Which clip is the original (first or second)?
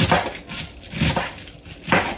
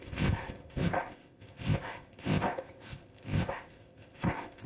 first